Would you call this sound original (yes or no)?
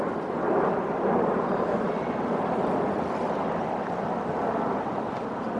yes